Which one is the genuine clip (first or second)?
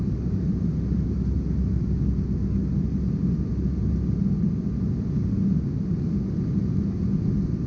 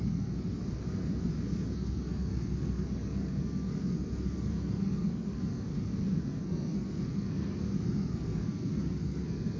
first